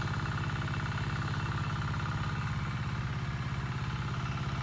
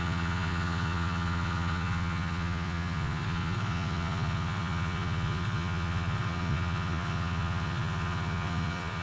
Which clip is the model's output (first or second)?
second